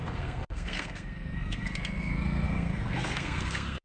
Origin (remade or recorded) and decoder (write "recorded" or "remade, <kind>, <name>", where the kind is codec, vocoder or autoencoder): remade, codec, SNAC